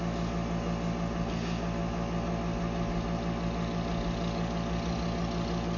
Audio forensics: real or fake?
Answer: real